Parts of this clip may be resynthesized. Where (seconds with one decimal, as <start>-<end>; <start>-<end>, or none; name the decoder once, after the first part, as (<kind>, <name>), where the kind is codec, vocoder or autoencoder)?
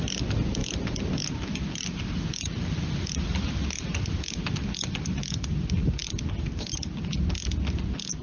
none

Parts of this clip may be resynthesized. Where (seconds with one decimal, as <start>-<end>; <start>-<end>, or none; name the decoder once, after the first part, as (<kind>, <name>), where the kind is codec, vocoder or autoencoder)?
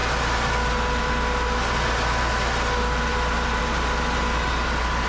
none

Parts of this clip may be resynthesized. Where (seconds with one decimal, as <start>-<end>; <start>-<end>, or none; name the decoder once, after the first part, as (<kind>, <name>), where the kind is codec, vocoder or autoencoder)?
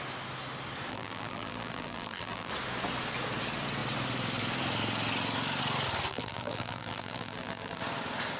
0.9-2.5 (vocoder, BigVGAN v2); 6.1-7.8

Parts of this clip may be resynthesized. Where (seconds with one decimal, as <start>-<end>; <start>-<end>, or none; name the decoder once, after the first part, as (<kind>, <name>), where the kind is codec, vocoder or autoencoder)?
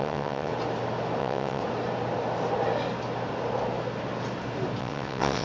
0.0-0.5 (vocoder, WaveNeXt); 1.2-1.6; 4.8-5.4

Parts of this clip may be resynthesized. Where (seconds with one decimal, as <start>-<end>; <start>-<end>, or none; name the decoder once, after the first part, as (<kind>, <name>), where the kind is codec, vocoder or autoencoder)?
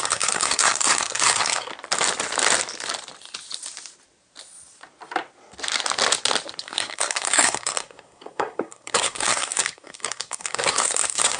0.0-1.7 (codec, SNAC); 6.6-11.4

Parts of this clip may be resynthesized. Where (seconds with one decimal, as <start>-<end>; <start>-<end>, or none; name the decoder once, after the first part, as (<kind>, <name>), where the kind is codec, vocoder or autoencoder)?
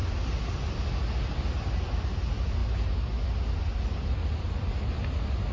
none